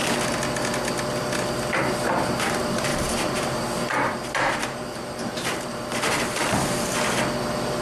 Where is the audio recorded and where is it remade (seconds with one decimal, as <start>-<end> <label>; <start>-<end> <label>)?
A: 0.0-2.9 recorded; 2.9-3.6 remade; 3.6-4.6 recorded; 4.6-7.2 remade; 7.2-7.8 recorded